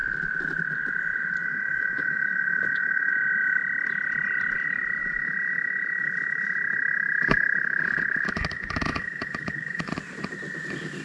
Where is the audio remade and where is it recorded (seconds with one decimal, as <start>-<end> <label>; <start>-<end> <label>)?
0.0-1.4 recorded; 1.4-3.1 remade; 3.1-5.0 recorded; 5.0-9.9 remade; 9.9-11.0 recorded